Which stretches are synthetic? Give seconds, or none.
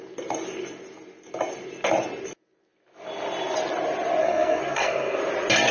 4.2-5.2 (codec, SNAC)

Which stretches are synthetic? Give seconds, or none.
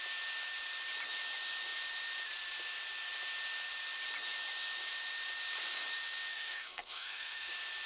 6.3-7.5 (codec, SNAC)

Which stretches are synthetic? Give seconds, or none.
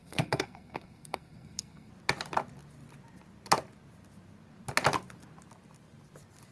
0.0-1.9 (codec, SNAC)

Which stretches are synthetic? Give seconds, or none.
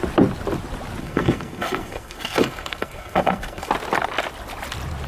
1.0-3.7 (codec, SNAC)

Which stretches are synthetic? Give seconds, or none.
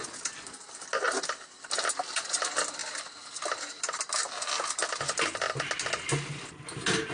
none